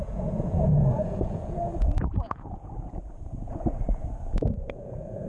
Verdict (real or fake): fake